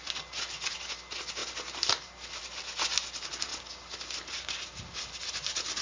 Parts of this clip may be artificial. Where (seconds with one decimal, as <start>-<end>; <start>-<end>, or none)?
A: none